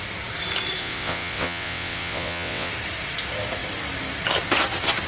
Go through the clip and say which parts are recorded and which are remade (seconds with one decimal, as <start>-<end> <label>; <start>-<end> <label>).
0.0-0.8 recorded; 0.8-2.7 remade; 2.7-5.1 recorded